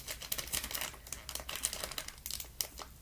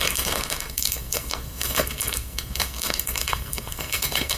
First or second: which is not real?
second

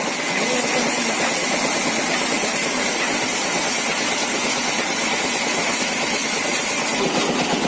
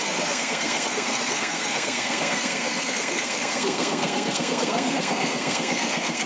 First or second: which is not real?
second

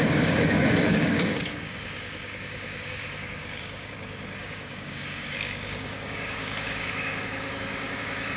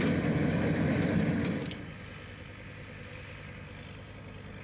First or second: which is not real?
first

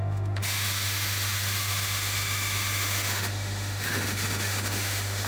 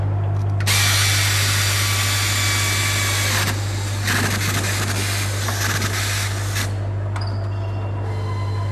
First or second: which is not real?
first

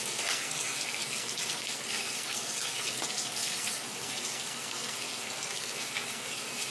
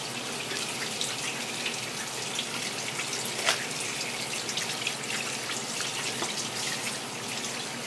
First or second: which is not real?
first